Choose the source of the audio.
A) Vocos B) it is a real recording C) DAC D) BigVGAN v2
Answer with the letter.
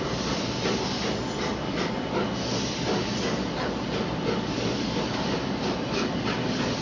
B